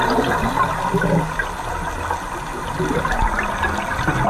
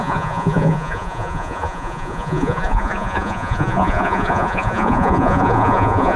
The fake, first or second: second